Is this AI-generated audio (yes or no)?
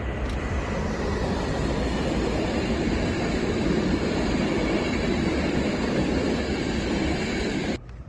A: yes